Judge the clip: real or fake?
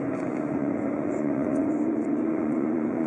fake